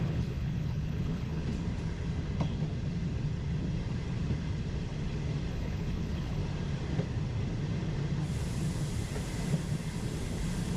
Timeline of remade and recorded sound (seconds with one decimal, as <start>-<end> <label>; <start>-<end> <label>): 0.0-1.4 remade; 1.4-5.5 recorded; 5.5-6.4 remade; 6.4-10.8 recorded